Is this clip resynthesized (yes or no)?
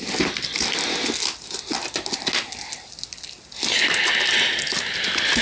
no